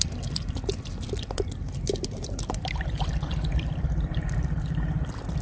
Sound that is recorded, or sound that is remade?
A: remade